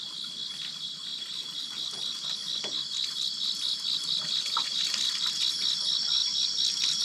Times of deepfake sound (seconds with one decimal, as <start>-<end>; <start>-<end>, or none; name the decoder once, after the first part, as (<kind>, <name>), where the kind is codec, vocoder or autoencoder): 1.1-5.3 (vocoder, BigVGAN v2); 6.2-7.0